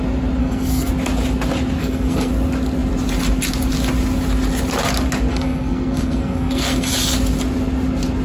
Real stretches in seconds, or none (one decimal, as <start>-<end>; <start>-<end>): 0.0-0.4; 0.9-1.8; 2.3-5.3; 6.9-8.2